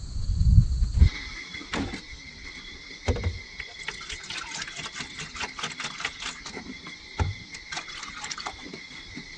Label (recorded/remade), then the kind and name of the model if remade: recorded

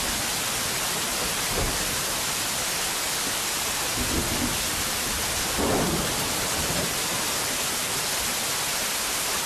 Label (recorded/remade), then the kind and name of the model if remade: recorded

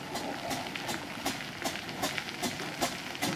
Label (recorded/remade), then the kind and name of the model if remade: recorded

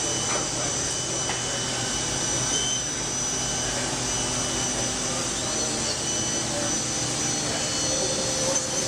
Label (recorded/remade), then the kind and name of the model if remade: recorded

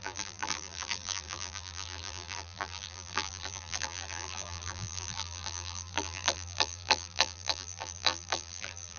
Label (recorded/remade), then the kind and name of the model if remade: remade, vocoder, BigVGAN v2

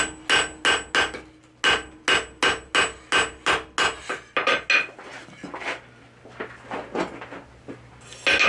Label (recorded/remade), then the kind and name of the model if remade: recorded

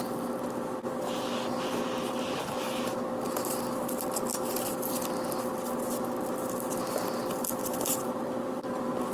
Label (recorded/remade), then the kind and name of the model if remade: recorded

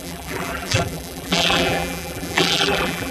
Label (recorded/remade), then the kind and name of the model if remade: remade, vocoder, BigVGAN v2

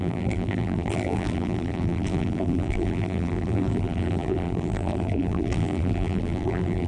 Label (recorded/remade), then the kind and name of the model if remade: remade, vocoder, BigVGAN v2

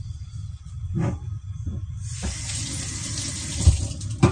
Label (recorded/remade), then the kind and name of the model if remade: remade, vocoder, BigVGAN v2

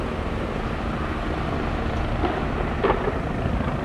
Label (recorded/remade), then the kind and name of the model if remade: recorded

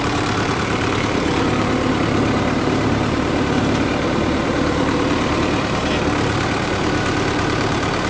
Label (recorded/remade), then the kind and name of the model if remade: remade, vocoder, BigVGAN v2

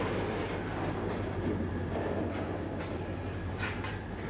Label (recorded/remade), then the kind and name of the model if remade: recorded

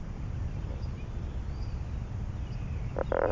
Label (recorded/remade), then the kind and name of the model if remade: remade, vocoder, BigVGAN v2